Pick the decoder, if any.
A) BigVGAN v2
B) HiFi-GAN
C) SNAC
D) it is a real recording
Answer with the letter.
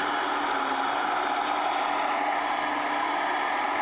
D